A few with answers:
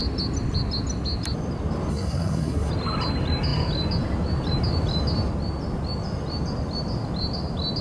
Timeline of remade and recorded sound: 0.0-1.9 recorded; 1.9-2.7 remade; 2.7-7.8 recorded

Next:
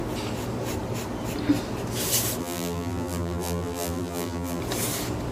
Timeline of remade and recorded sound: 0.0-2.4 recorded; 2.4-4.6 remade; 4.6-5.3 recorded

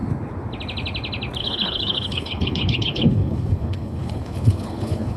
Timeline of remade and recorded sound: 0.0-1.4 recorded; 1.4-5.2 remade

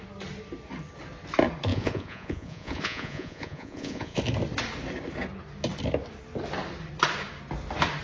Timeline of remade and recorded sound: 0.0-1.7 recorded; 1.7-4.2 remade; 4.2-8.0 recorded